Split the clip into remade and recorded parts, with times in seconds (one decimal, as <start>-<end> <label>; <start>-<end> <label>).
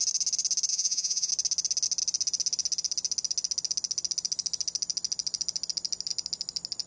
0.0-0.7 recorded; 0.7-1.3 remade; 1.3-6.9 recorded